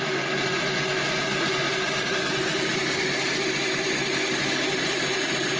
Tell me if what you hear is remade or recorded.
recorded